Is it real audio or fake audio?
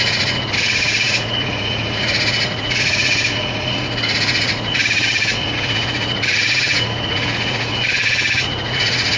fake